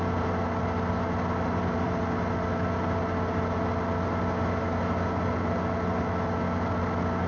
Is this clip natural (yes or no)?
yes